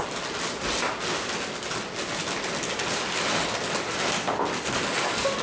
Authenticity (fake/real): real